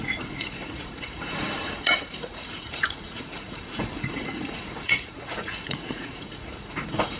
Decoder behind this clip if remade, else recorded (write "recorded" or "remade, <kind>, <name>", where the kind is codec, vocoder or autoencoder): remade, vocoder, Vocos